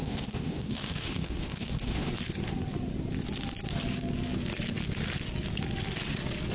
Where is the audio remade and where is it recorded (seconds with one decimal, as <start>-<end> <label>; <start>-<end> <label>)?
0.0-2.1 remade; 2.1-6.5 recorded